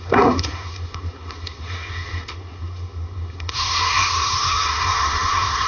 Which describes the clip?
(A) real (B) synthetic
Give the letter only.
B